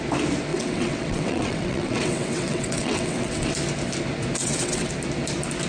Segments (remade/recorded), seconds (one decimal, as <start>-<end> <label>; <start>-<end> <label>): 0.0-0.5 recorded; 0.5-3.5 remade; 3.5-4.4 recorded; 4.4-4.9 remade; 4.9-5.7 recorded